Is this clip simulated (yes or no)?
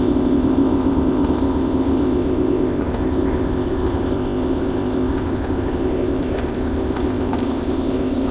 yes